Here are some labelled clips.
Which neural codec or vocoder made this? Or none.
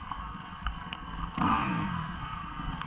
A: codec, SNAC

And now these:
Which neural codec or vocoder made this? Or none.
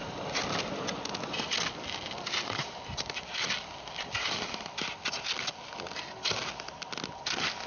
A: none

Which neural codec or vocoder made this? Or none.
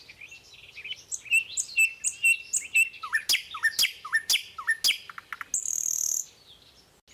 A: none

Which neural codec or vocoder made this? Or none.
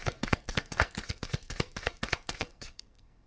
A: codec, SNAC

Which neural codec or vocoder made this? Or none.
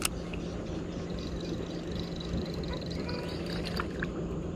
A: none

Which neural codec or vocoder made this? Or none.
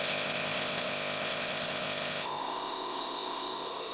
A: codec, ZipCodec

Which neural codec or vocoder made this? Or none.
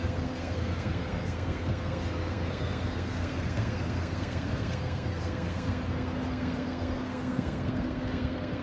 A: codec, SNAC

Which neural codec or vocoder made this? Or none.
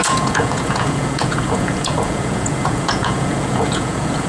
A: vocoder, Vocos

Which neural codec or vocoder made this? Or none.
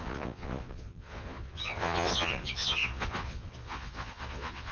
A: vocoder, Vocos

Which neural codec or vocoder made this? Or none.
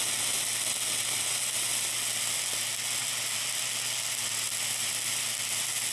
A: none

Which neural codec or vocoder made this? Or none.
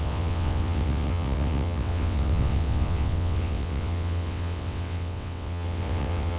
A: vocoder, WaveNeXt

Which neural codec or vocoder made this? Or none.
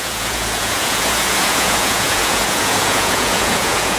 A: vocoder, Vocos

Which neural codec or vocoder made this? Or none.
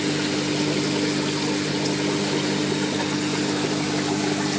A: none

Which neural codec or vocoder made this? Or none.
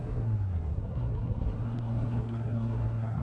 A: codec, SNAC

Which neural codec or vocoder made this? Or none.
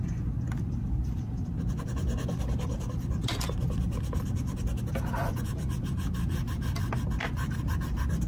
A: none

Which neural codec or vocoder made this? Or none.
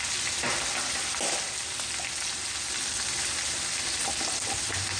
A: none